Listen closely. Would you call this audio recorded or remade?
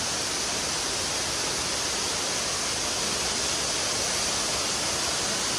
recorded